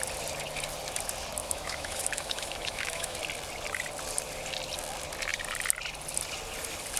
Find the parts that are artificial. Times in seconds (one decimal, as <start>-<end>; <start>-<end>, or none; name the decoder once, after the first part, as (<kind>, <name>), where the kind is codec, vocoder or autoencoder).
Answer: 1.4-3.2 (autoencoder, DAC-VAE)